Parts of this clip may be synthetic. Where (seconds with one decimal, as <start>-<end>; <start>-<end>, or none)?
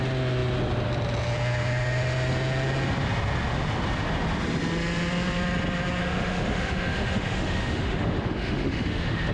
6.0-9.3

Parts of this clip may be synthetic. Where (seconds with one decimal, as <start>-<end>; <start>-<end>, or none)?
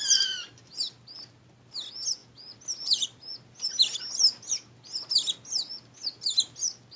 none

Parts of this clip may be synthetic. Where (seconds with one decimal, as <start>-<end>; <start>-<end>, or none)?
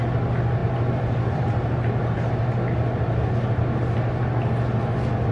0.6-3.3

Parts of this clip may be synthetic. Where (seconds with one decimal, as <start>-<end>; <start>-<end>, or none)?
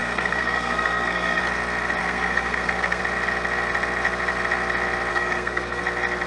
0.0-1.4; 2.0-3.0; 5.1-5.8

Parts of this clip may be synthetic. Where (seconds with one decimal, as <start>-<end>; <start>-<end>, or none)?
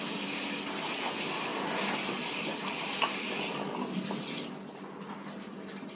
none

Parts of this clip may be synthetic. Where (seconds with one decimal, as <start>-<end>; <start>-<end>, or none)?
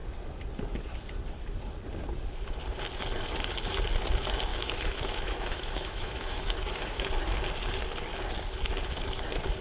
4.5-7.1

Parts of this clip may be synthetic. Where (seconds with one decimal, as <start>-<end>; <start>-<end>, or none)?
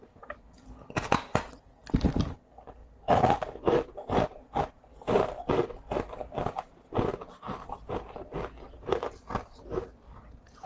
none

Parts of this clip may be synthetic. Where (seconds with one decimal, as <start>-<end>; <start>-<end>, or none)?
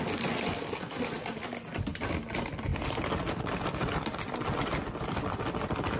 none